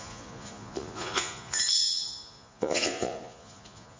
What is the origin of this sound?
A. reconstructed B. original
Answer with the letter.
A